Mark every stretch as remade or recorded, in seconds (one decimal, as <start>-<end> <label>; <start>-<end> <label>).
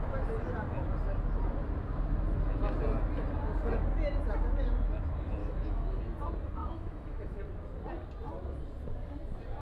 0.0-5.4 recorded; 5.4-6.0 remade; 6.0-6.6 recorded; 6.6-7.4 remade; 7.4-9.6 recorded